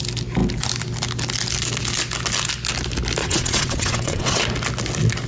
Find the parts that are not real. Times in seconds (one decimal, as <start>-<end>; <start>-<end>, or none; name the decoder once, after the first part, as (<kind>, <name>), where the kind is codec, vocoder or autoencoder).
3.2-4.4 (vocoder, WaveNeXt)